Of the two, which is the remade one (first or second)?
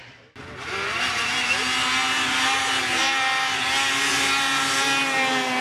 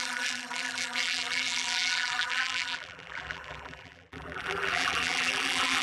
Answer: second